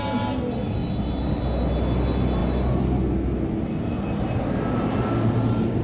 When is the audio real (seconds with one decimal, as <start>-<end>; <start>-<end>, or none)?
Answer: 0.0-5.8

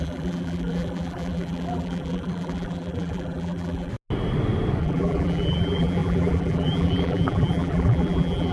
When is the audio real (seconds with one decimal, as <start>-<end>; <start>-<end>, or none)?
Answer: 3.9-4.8

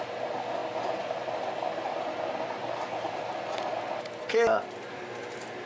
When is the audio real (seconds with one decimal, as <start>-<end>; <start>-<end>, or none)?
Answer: 0.0-5.7

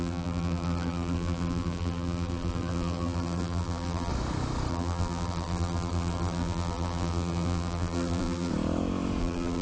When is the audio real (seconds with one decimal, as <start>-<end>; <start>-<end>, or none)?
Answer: 4.1-4.7; 8.5-9.2

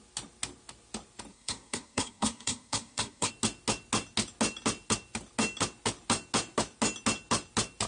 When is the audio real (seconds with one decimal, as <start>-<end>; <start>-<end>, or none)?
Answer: 0.0-1.3; 3.3-7.9

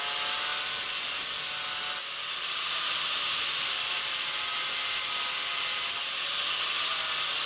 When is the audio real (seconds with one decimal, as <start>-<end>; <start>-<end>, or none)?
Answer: 0.0-7.5

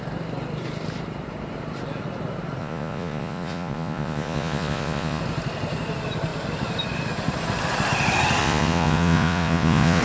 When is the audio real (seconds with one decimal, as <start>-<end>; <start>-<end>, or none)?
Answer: 0.0-2.6; 5.2-8.4

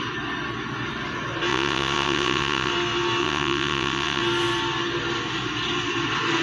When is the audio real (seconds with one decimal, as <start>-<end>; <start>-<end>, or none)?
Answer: 0.0-1.5; 2.7-3.2; 4.2-6.4